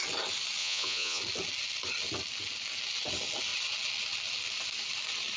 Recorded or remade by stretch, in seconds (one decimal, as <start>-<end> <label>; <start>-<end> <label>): 0.0-0.6 recorded; 0.6-1.2 remade; 1.2-5.4 recorded